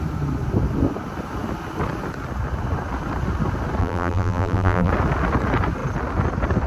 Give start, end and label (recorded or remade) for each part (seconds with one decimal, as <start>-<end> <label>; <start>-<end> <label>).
0.0-3.8 recorded; 3.8-4.9 remade; 4.9-6.7 recorded